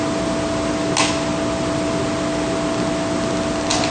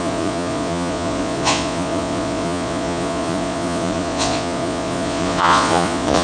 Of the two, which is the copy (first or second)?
second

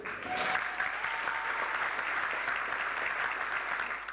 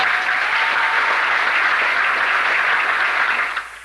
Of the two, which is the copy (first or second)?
second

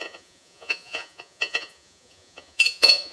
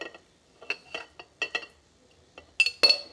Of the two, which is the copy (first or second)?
first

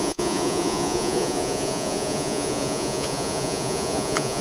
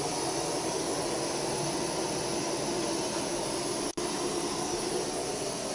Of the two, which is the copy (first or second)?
first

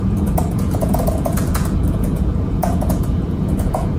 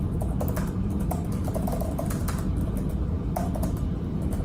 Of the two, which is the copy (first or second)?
first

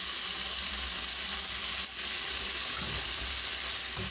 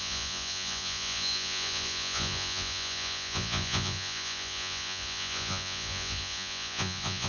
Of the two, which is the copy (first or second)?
second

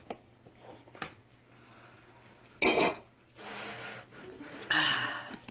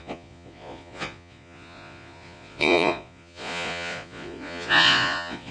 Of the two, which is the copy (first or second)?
second